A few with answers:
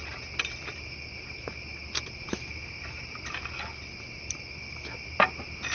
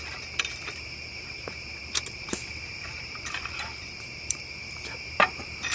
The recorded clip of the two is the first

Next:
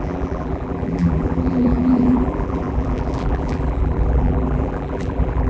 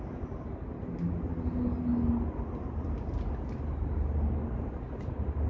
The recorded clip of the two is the second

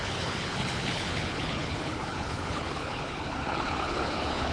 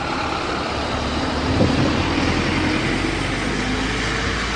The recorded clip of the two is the second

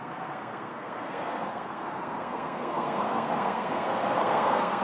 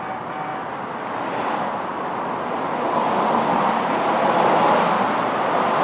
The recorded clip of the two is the second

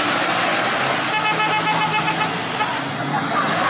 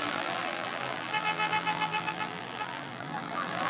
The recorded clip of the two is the first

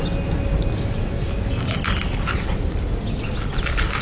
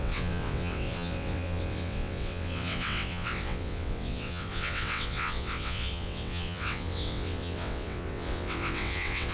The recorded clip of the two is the first